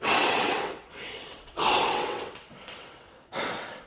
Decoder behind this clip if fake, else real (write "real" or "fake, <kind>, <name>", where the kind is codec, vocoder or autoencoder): fake, vocoder, WaveNeXt